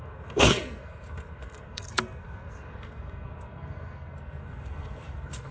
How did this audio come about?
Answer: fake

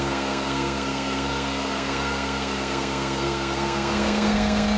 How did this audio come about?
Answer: fake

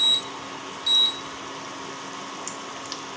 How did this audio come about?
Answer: real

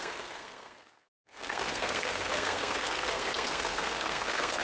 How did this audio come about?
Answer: fake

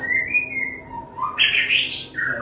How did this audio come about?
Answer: real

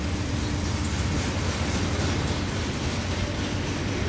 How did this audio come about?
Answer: real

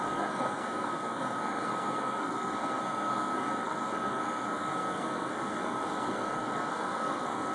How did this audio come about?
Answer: fake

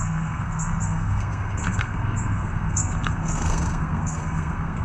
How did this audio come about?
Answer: fake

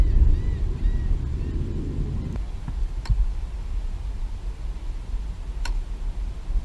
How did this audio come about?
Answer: real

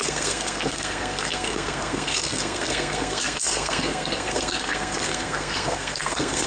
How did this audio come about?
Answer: fake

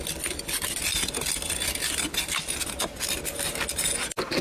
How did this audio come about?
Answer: real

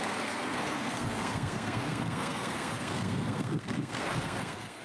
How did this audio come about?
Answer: fake